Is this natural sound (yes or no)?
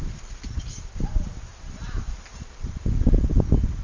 yes